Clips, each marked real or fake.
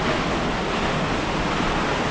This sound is real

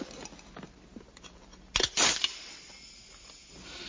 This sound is real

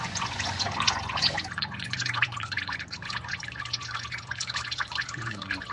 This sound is fake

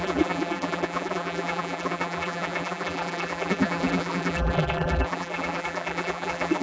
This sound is fake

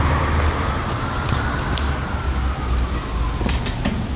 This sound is real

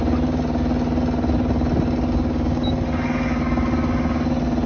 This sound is real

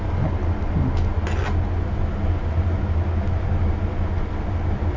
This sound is real